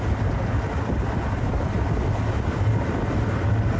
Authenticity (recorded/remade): recorded